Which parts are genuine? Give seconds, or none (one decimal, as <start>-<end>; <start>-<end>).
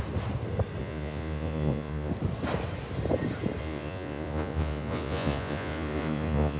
0.0-0.8; 2.1-3.6